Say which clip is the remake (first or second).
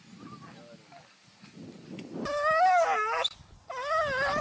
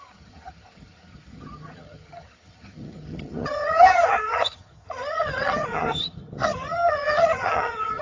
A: second